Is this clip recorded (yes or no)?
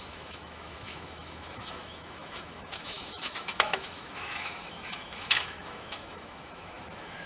no